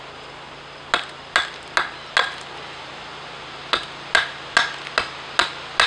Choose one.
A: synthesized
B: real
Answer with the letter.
B